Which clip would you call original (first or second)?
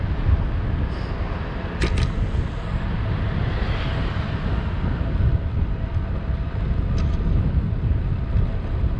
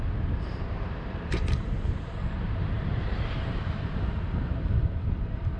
first